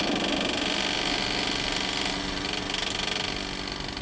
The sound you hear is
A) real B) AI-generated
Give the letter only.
A